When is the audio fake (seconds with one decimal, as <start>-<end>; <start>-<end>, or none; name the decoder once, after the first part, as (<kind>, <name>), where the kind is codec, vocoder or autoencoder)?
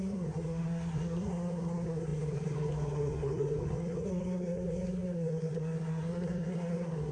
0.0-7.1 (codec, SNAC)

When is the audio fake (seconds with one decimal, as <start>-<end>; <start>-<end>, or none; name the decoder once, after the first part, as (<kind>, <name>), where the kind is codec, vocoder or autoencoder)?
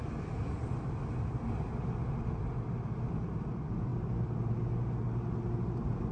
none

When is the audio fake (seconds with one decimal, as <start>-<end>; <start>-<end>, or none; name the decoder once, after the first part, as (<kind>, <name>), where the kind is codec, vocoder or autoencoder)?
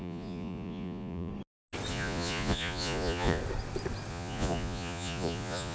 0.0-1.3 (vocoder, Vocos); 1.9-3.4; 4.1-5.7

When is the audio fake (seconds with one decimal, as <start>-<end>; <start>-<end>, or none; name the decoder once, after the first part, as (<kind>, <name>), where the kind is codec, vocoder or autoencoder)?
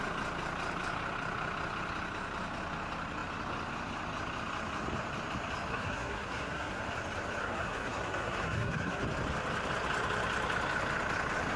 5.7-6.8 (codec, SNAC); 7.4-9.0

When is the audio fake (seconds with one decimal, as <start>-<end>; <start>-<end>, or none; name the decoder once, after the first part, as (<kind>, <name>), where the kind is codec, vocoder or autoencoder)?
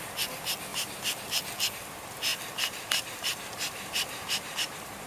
0.7-1.2 (vocoder, BigVGAN v2); 2.3-5.1